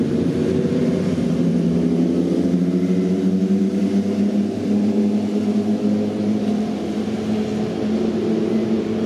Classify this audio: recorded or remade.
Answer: recorded